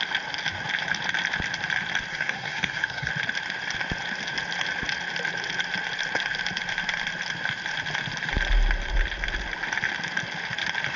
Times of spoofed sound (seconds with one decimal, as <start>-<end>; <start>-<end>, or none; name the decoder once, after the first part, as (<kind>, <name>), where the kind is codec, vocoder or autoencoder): 2.1-3.1 (codec, SNAC)